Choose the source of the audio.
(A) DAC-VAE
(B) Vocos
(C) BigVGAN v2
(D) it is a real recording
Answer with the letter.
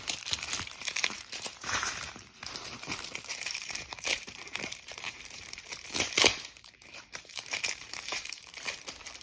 C